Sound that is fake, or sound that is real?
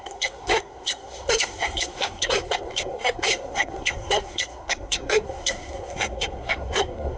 fake